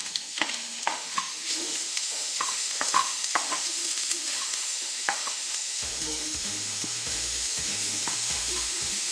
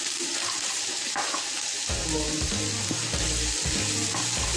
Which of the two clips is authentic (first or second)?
second